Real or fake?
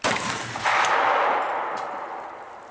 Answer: real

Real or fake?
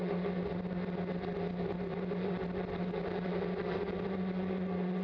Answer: real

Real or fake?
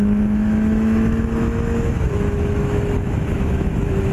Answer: fake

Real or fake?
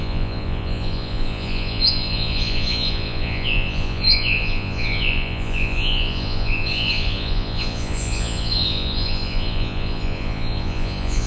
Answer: fake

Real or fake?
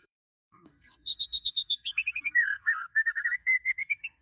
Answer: fake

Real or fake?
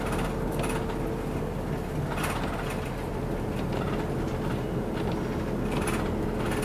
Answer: real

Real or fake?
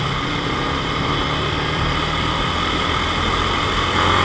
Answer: fake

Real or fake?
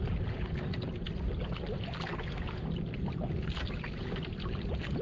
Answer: real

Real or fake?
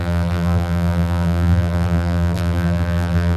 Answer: fake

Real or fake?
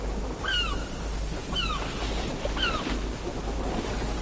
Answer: real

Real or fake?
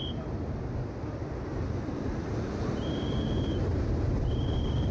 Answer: fake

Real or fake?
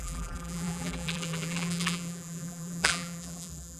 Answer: fake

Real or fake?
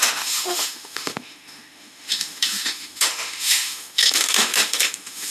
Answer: fake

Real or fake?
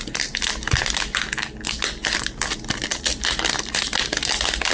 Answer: fake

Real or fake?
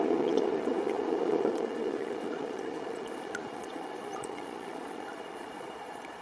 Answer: fake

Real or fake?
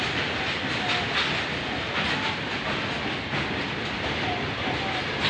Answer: real